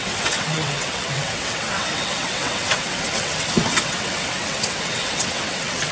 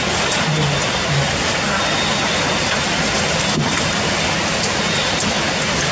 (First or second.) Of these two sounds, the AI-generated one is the first